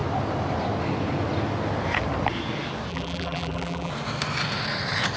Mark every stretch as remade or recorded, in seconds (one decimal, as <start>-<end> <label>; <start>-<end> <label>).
0.0-2.9 recorded; 2.9-3.9 remade; 3.9-5.2 recorded